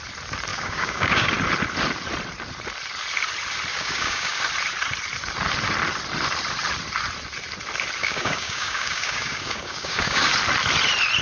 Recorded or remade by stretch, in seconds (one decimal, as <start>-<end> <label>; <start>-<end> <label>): 0.0-0.5 recorded; 0.5-1.3 remade; 1.3-3.7 recorded; 3.7-4.4 remade; 4.4-8.0 recorded; 8.0-10.3 remade; 10.3-11.2 recorded